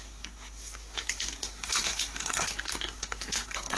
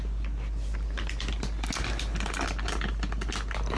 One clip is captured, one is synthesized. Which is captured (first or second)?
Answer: second